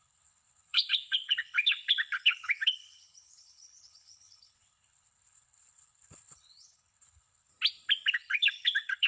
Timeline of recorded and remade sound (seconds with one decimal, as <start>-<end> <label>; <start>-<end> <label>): 0.0-7.5 remade; 7.5-8.1 recorded; 8.1-9.1 remade